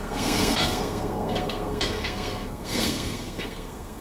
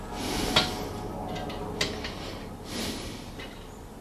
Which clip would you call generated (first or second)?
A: first